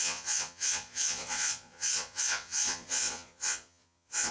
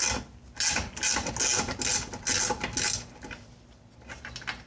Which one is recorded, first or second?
second